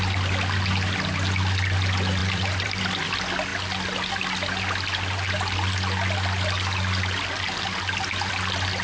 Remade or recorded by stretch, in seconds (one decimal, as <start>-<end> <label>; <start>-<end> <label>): 0.0-2.2 recorded; 2.2-2.8 remade; 2.8-8.8 recorded